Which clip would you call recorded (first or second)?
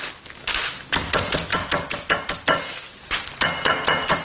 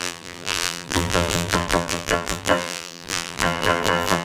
first